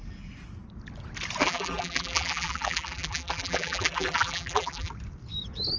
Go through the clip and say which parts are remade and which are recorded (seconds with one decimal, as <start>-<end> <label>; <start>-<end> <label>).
0.0-1.4 recorded; 1.4-4.9 remade; 4.9-5.8 recorded